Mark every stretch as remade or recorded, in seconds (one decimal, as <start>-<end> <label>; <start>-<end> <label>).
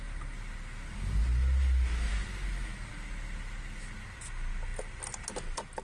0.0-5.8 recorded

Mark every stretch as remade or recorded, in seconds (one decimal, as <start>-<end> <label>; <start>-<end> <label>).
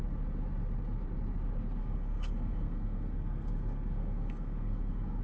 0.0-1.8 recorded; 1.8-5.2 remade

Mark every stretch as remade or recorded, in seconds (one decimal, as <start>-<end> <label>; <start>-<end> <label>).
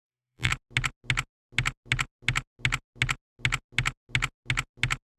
0.0-0.5 remade; 0.5-5.2 recorded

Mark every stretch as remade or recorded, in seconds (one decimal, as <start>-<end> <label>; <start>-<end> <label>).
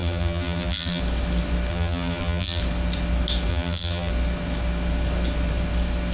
0.0-1.0 remade; 1.0-1.7 recorded; 1.7-2.6 remade; 2.6-3.5 recorded; 3.5-4.1 remade; 4.1-6.1 recorded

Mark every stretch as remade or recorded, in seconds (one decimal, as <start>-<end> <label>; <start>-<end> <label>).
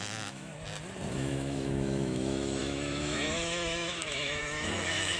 0.0-0.5 remade; 0.5-1.1 recorded; 1.1-5.2 remade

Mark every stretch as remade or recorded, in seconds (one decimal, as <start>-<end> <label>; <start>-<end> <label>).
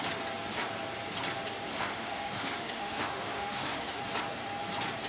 0.0-1.7 recorded; 1.7-4.0 remade; 4.0-5.1 recorded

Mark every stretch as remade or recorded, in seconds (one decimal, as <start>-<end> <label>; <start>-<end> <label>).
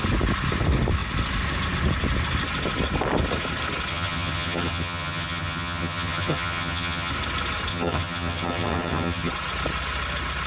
0.0-3.9 recorded; 3.9-7.1 remade; 7.1-7.7 recorded; 7.7-9.3 remade; 9.3-10.5 recorded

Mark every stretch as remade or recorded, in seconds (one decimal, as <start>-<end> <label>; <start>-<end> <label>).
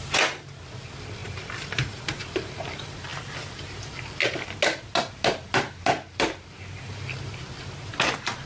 0.0-1.2 recorded; 1.2-2.2 remade; 2.2-8.5 recorded